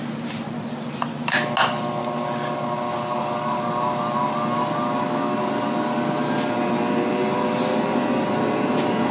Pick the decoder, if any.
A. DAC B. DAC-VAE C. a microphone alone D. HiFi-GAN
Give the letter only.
C